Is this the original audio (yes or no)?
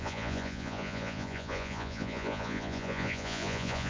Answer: no